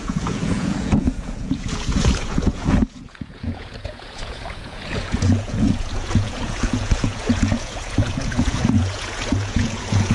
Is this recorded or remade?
remade